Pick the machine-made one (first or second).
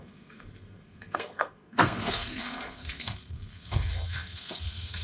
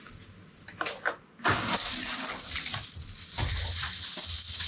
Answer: first